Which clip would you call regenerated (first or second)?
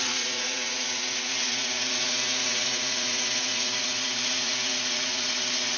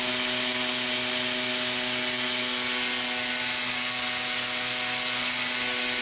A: first